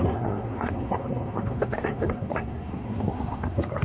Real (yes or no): no